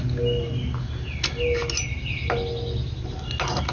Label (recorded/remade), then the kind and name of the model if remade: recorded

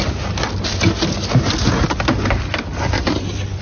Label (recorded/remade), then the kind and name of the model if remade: recorded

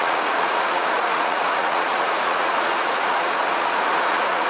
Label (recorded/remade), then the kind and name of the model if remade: remade, vocoder, Vocos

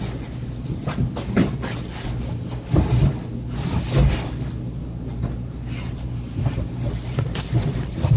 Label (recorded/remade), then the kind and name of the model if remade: recorded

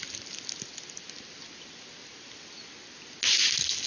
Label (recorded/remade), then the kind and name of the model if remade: recorded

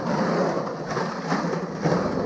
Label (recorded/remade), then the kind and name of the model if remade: recorded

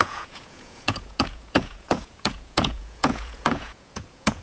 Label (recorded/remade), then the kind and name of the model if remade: remade, vocoder, Vocos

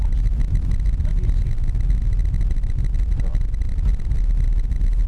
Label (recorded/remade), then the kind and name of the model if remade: recorded